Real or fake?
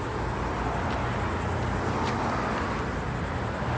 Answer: real